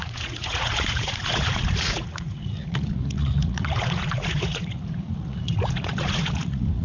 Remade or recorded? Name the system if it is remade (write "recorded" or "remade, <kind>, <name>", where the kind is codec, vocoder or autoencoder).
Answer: remade, vocoder, Vocos